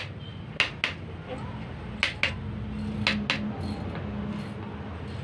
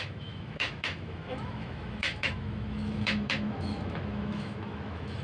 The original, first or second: first